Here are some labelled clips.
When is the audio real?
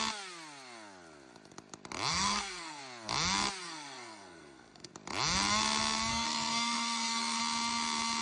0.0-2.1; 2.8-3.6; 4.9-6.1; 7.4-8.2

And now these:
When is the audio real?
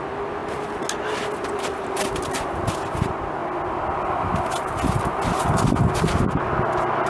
0.0-7.1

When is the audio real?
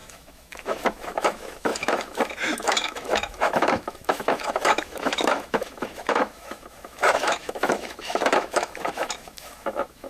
none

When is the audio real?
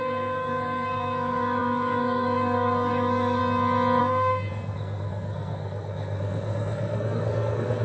3.4-4.0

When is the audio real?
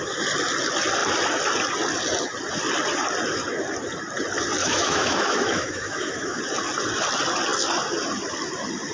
0.0-4.6; 6.4-8.9